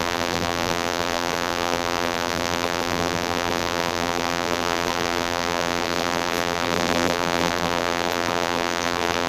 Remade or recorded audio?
remade